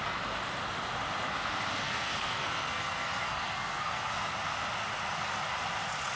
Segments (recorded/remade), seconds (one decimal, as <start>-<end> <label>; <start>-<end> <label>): 0.0-1.8 recorded; 1.8-4.3 remade; 4.3-6.2 recorded